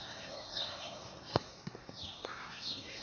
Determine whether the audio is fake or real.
fake